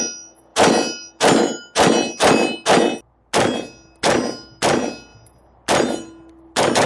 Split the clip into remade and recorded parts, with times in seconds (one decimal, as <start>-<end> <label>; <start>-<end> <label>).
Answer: 0.0-6.9 recorded